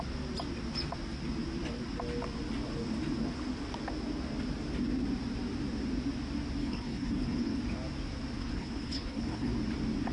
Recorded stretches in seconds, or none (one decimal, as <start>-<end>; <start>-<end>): 0.0-6.6; 7.6-8.4; 9.5-10.1